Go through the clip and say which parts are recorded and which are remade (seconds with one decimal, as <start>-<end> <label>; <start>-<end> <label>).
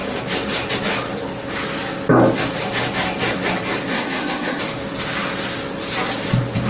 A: 0.0-3.9 recorded; 3.9-4.6 remade; 4.6-6.7 recorded